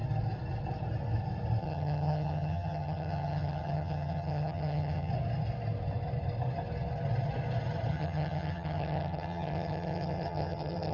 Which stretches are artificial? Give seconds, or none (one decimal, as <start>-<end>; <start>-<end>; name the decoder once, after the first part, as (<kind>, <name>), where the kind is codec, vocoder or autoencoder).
1.6-5.1 (vocoder, HiFi-GAN); 7.9-10.9